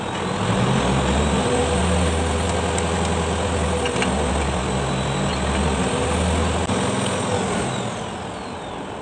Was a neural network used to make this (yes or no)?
no